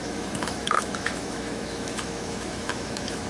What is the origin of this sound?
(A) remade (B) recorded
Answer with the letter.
A